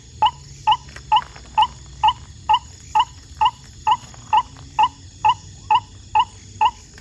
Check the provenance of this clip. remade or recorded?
recorded